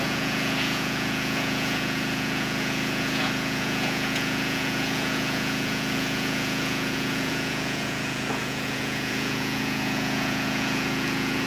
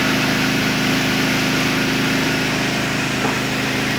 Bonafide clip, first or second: second